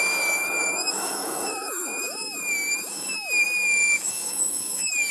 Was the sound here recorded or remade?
remade